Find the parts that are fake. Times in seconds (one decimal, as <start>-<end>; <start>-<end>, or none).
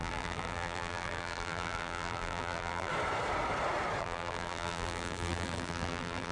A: 0.0-2.9; 4.0-6.3